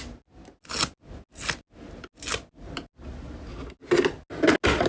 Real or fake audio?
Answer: real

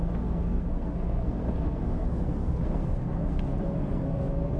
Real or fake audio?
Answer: fake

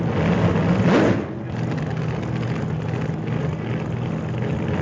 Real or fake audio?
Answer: real